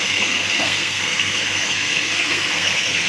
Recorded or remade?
remade